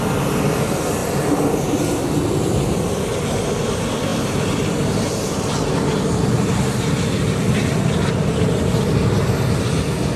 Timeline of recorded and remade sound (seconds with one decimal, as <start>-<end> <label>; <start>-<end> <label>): 0.0-10.2 recorded